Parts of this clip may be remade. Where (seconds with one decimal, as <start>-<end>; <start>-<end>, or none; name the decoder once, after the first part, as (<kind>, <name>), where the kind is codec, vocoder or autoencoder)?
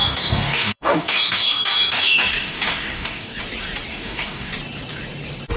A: 0.0-3.4 (codec, DAC); 3.9-4.5